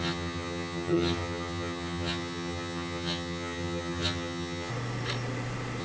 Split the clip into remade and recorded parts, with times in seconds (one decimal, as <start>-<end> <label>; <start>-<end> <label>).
0.0-4.7 remade; 4.7-5.8 recorded

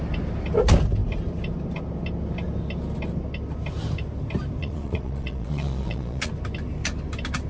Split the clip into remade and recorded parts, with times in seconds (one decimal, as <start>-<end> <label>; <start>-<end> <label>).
0.0-4.6 recorded; 4.6-6.3 remade; 6.3-7.5 recorded